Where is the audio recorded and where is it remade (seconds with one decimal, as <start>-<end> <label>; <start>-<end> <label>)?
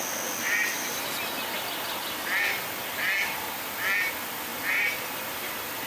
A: 0.0-5.9 recorded